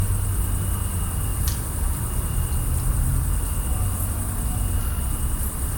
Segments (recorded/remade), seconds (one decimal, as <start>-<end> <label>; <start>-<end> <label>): 0.0-1.3 recorded; 1.3-4.1 remade; 4.1-5.8 recorded